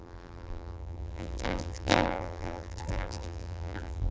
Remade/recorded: remade